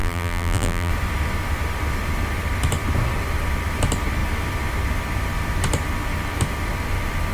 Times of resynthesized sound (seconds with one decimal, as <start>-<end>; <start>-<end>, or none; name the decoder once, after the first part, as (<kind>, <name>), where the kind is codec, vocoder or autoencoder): 0.0-0.9 (vocoder, BigVGAN v2)